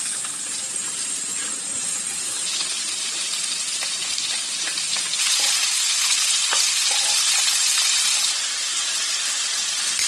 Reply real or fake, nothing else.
real